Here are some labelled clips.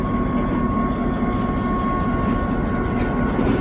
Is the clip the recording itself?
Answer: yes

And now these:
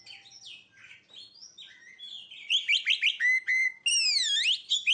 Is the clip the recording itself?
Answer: yes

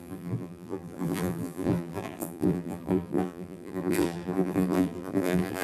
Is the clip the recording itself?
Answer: no